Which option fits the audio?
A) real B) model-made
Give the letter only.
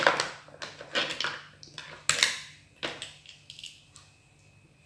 A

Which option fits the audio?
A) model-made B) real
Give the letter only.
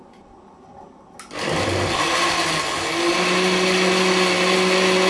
B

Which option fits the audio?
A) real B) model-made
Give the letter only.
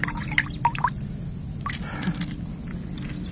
A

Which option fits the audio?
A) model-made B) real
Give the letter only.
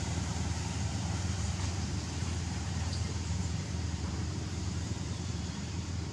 A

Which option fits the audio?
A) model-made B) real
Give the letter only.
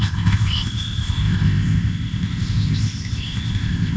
A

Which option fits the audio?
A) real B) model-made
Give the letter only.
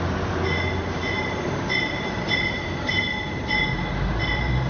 A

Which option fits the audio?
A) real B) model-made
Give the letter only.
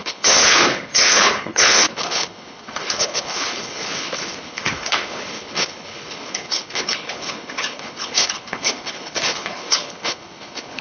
B